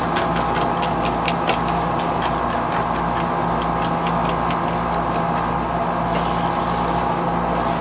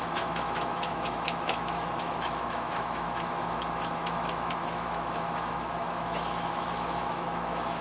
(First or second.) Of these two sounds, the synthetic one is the second